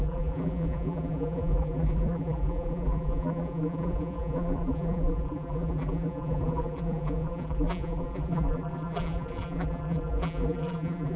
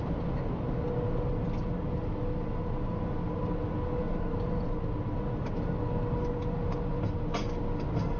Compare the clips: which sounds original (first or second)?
second